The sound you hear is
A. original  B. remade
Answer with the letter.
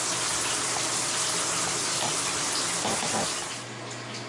A